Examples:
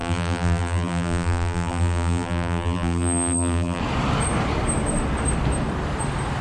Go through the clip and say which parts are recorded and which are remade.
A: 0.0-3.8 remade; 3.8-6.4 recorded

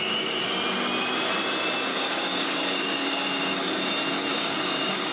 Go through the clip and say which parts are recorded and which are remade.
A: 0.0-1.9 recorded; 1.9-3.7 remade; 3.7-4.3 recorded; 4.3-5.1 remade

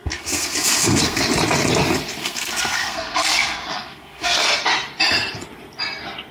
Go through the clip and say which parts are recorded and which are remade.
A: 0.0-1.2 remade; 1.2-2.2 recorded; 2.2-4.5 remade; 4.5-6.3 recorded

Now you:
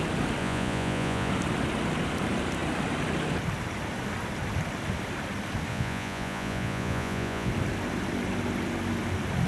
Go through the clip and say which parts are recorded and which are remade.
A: 0.0-0.4 recorded; 0.4-1.3 remade; 1.3-5.7 recorded; 5.7-7.5 remade; 7.5-9.5 recorded

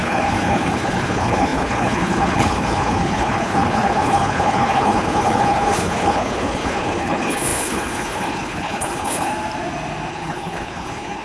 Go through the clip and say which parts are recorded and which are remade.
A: 0.0-9.3 remade; 9.3-10.1 recorded; 10.1-11.2 remade